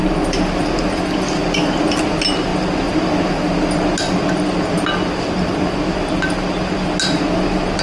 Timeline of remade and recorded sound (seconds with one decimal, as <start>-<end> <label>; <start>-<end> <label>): 0.0-7.8 recorded